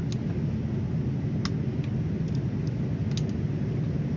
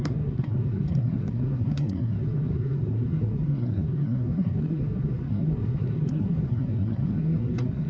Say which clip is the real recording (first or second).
first